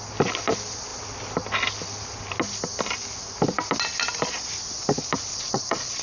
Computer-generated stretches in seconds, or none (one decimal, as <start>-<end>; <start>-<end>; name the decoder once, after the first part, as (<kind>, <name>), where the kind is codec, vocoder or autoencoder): 5.3-6.0 (vocoder, Vocos)